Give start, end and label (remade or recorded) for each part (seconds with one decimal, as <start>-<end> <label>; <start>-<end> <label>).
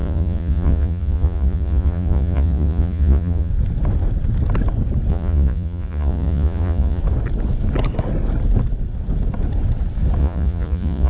0.0-3.5 remade; 3.5-5.1 recorded; 5.1-7.0 remade; 7.0-10.2 recorded; 10.2-11.1 remade